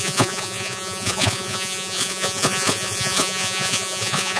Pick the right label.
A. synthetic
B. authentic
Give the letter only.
A